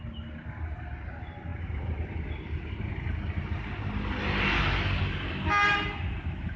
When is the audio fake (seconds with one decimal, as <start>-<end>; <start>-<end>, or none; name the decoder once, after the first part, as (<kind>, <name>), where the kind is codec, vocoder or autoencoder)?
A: none